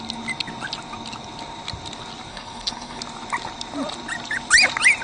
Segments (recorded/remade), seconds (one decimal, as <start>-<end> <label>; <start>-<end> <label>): 0.0-2.3 recorded; 2.3-3.0 remade; 3.0-5.0 recorded